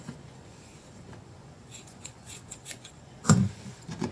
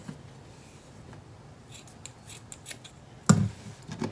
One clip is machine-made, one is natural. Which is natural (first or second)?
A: second